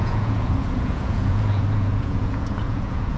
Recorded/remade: remade